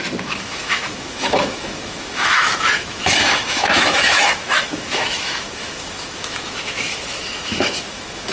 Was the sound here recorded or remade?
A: remade